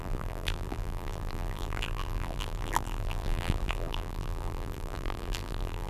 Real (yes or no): no